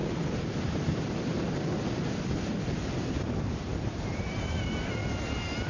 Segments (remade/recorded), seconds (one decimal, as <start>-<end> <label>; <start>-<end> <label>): 0.0-3.4 recorded; 3.4-5.0 remade; 5.0-5.7 recorded